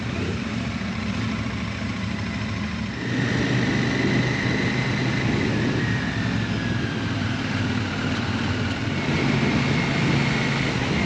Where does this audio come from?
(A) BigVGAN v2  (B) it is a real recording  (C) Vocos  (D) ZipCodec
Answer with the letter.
B